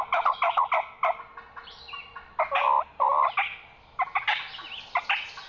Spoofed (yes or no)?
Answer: no